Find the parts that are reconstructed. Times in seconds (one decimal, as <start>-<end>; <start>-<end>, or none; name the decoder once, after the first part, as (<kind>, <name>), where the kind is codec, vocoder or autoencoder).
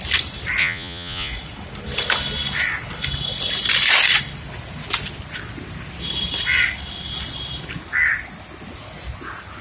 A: 0.6-1.3 (vocoder, Vocos)